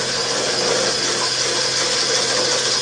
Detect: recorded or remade recorded